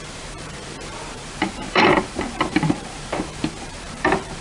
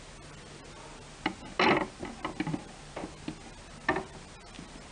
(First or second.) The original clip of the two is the second